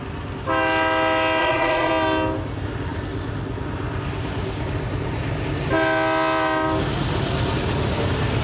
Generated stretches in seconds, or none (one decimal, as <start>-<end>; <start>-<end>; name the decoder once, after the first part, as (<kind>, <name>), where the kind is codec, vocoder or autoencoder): 1.4-1.9 (vocoder, Vocos)